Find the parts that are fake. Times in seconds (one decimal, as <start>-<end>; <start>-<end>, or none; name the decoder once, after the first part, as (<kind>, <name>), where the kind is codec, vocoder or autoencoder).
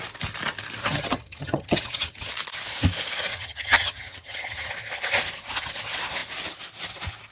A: 0.8-2.3 (vocoder, HiFi-GAN); 3.3-4.7